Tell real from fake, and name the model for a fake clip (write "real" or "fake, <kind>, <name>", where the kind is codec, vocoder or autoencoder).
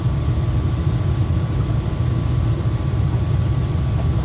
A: real